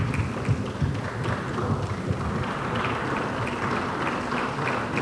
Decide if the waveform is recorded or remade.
recorded